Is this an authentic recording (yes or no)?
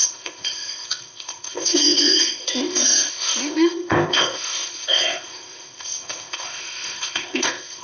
no